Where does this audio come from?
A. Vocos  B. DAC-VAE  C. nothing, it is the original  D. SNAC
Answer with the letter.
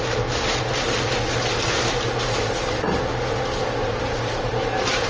C